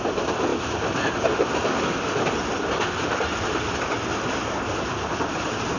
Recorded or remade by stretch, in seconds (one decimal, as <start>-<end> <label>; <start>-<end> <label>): 0.0-5.8 recorded